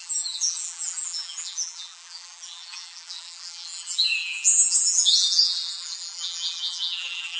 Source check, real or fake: fake